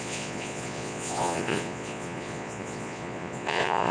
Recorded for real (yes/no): no